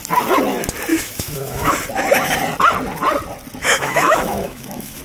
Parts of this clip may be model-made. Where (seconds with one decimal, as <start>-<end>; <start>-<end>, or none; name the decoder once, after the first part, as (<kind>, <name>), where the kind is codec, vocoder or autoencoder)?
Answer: 0.9-1.7 (autoencoder, DAC-VAE); 3.6-5.0